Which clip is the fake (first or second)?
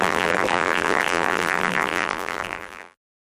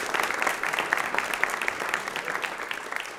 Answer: first